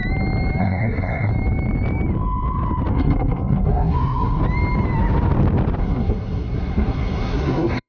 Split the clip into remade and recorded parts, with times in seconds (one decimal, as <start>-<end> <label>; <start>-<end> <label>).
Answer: 0.0-0.6 recorded; 0.6-1.3 remade; 1.3-2.9 recorded; 2.9-4.4 remade; 4.4-5.8 recorded; 5.8-7.9 remade